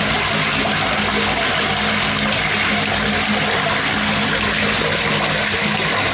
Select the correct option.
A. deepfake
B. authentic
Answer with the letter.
B